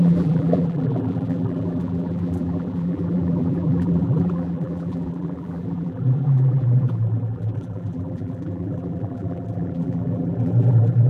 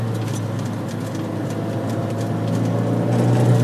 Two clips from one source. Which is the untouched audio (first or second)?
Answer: second